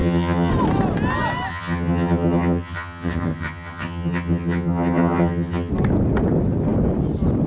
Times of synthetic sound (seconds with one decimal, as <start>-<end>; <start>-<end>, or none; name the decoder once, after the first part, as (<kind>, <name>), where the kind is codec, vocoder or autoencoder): 0.0-0.5 (vocoder, HiFi-GAN); 1.5-5.7